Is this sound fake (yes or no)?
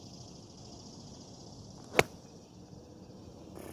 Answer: no